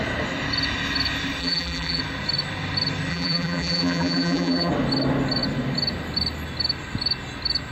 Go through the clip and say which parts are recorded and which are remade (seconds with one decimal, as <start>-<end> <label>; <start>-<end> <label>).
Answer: 0.0-1.4 recorded; 1.4-2.0 remade; 2.0-3.1 recorded; 3.1-4.7 remade; 4.7-7.7 recorded

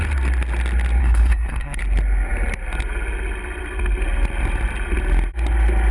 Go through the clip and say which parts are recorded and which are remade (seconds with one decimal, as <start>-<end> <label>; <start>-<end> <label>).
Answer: 0.0-1.0 recorded; 1.0-1.8 remade; 1.8-5.9 recorded

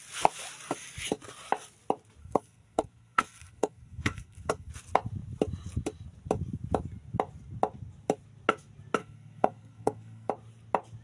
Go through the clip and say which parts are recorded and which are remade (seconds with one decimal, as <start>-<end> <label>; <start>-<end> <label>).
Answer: 0.0-2.2 recorded; 2.2-4.7 remade; 4.7-9.0 recorded; 9.0-10.3 remade; 10.3-11.0 recorded

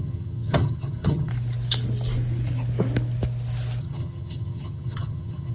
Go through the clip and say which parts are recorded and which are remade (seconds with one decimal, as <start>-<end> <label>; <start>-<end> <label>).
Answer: 0.0-1.3 remade; 1.3-3.8 recorded; 3.8-5.5 remade

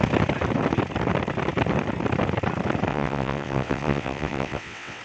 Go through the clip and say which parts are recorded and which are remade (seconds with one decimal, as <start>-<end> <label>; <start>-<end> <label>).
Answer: 0.0-2.9 recorded; 2.9-5.0 remade

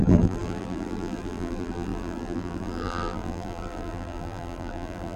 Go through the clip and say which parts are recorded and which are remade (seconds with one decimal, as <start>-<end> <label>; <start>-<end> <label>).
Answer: 0.0-5.2 remade

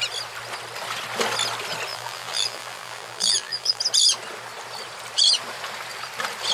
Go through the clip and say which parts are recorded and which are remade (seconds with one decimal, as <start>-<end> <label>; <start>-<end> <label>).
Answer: 0.0-1.9 recorded; 1.9-3.8 remade; 3.8-6.5 recorded